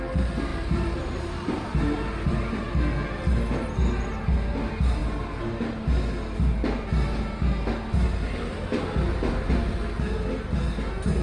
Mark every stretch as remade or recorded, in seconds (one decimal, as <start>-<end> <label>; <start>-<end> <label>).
0.0-0.5 recorded; 0.5-2.7 remade; 2.7-11.2 recorded